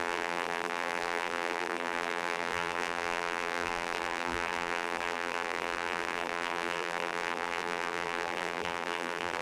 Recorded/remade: remade